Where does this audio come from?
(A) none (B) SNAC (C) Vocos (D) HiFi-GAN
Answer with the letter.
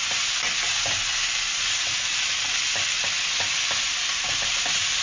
A